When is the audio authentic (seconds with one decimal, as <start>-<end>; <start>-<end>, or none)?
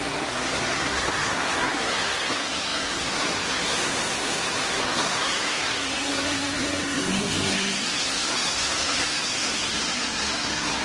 none